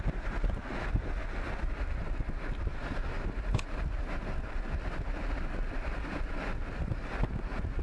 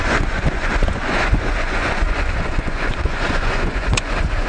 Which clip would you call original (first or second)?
first